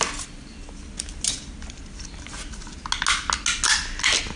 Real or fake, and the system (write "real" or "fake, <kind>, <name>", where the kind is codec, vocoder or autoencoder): real